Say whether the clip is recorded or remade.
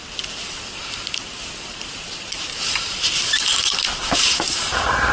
remade